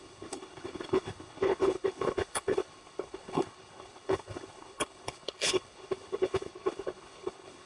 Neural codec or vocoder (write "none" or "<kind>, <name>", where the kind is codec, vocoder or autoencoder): codec, HILCodec